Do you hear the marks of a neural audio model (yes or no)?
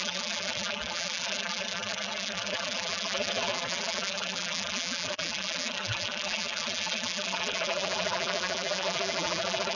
yes